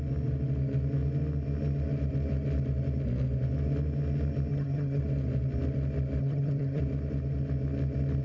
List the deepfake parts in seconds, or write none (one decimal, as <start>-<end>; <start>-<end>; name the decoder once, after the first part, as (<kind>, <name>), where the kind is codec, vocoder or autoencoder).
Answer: 4.5-5.0 (vocoder, HiFi-GAN); 6.2-6.8